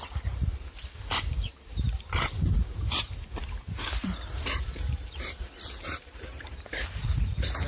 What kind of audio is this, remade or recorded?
remade